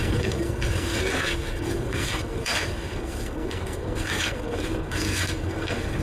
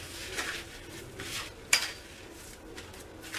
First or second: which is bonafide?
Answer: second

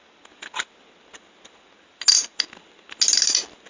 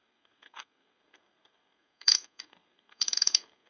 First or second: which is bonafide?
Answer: first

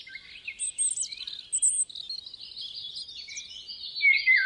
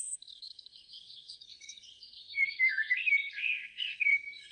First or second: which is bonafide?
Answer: first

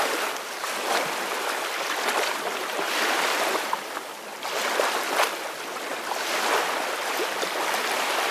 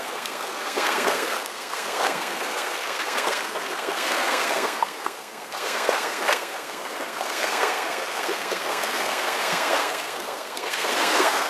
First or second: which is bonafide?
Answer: first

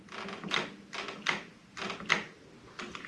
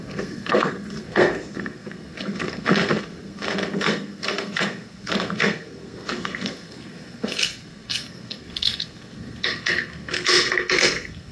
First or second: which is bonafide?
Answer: first